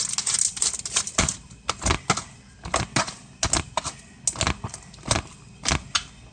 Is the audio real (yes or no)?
yes